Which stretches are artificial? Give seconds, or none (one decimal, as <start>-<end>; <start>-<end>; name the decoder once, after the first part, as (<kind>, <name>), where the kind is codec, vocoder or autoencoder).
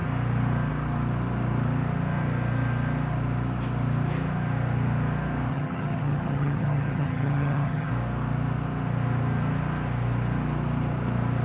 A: 5.5-7.9 (vocoder, HiFi-GAN)